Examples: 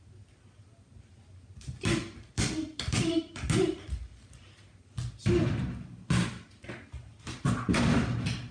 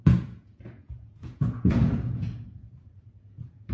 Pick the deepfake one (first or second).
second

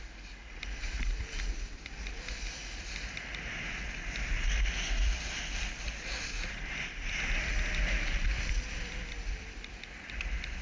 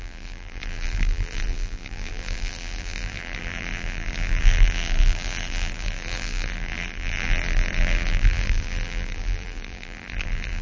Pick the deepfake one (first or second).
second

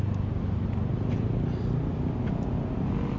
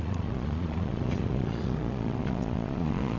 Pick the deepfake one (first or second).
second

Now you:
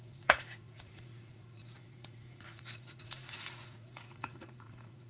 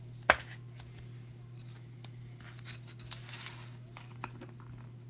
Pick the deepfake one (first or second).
first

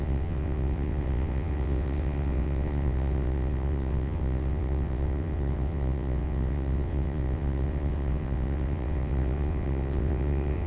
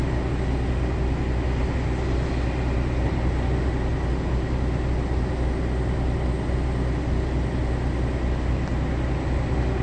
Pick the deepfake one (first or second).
first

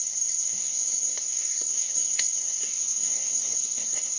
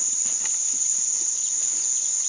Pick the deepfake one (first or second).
first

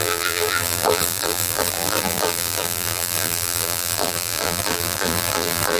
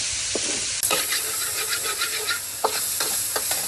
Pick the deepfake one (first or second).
first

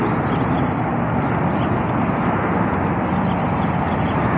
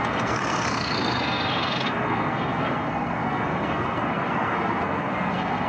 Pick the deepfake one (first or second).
second